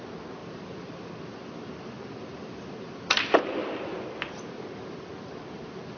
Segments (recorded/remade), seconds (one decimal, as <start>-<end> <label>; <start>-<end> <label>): 0.0-0.4 recorded; 0.4-4.0 remade; 4.0-6.0 recorded